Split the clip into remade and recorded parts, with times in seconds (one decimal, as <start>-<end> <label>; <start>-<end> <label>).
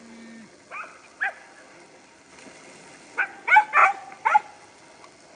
0.0-2.3 recorded; 2.3-3.2 remade; 3.2-3.8 recorded; 3.8-4.4 remade; 4.4-5.4 recorded